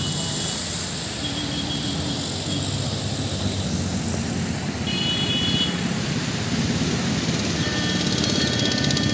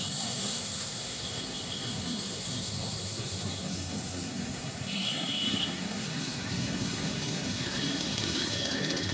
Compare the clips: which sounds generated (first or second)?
second